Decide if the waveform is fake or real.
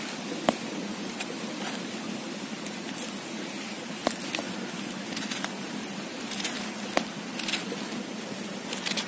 real